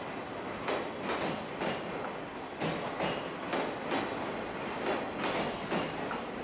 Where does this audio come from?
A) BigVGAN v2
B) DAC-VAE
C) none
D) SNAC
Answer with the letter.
C